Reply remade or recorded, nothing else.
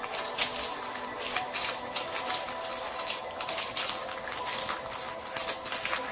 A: recorded